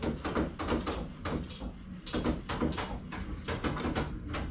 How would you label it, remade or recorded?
recorded